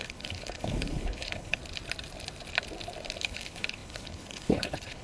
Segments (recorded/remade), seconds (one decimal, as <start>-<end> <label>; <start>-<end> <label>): 0.0-1.6 remade; 1.6-3.2 recorded; 3.2-5.0 remade